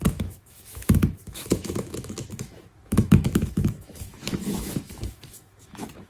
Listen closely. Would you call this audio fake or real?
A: fake